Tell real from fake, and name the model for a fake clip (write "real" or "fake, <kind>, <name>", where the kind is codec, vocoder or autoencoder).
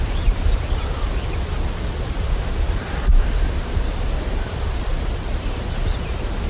real